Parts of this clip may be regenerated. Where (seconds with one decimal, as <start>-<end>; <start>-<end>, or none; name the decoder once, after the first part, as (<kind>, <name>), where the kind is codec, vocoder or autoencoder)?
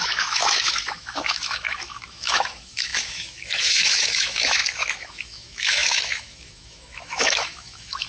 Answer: 0.0-8.1 (autoencoder, DAC-VAE)